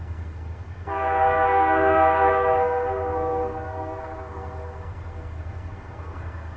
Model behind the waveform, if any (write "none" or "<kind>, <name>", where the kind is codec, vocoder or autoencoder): codec, SNAC